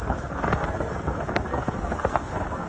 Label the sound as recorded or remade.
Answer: remade